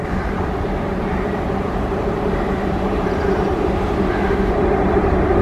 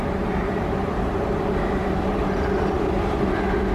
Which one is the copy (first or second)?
first